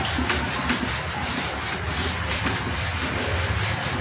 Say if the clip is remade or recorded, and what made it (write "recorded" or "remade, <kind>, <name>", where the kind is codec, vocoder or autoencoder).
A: recorded